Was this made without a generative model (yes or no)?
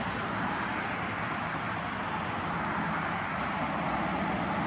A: yes